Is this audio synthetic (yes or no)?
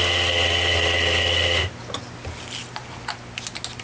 no